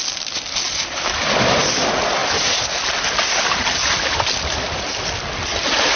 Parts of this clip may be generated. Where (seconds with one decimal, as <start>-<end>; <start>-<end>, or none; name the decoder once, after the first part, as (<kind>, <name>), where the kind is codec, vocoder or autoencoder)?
none